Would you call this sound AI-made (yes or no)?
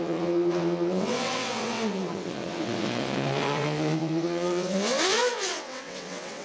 yes